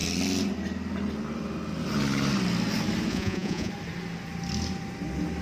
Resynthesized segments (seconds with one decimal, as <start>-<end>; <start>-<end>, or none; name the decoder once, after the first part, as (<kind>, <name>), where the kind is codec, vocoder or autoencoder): 3.1-3.7 (vocoder, Vocos)